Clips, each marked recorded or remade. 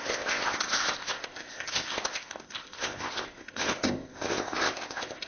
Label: remade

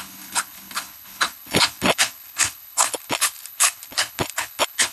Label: remade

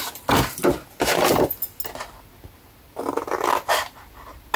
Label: recorded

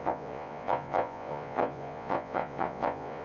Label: remade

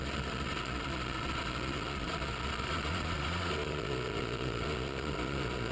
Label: remade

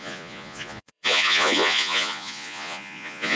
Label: remade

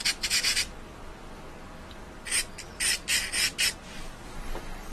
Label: recorded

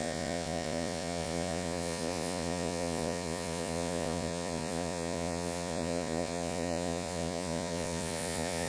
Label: remade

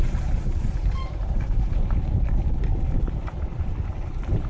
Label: remade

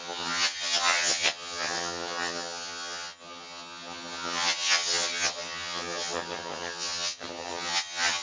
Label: remade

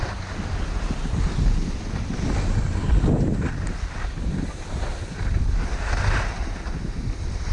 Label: recorded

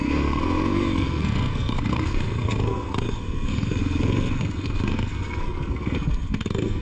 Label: remade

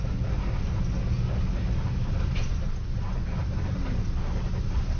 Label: recorded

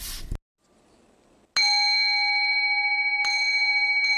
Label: recorded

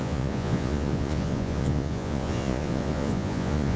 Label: remade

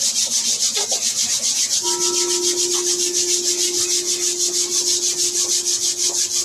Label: recorded